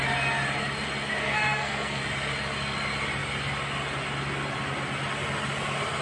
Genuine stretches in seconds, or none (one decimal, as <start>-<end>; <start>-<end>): 0.0-1.2; 2.0-6.0